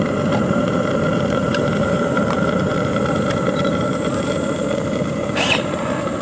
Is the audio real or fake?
fake